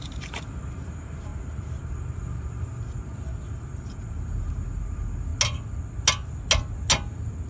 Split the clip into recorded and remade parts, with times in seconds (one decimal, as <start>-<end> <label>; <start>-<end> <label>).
0.0-3.1 remade; 3.1-3.9 recorded; 3.9-5.3 remade; 5.3-7.5 recorded